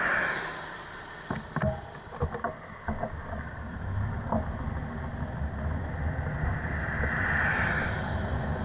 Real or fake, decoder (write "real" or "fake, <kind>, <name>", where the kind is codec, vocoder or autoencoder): real